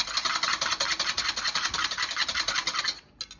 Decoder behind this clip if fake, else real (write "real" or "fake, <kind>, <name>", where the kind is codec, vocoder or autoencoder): real